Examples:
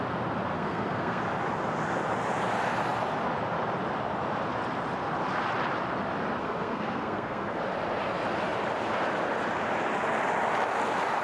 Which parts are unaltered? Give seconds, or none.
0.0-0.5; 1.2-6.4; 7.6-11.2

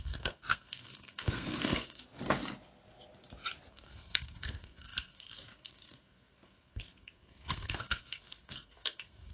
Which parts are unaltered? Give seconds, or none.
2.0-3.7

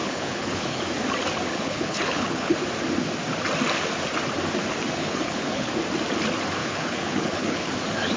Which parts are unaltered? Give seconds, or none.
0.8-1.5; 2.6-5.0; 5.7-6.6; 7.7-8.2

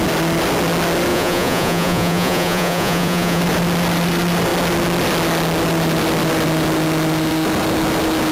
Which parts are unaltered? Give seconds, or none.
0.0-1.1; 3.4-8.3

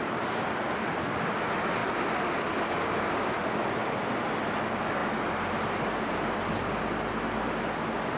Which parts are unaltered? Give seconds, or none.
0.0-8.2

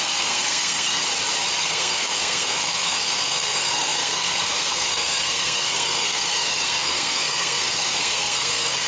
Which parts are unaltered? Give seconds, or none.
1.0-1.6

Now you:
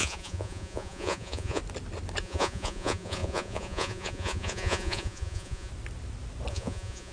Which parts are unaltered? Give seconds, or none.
1.6-2.2; 5.7-6.5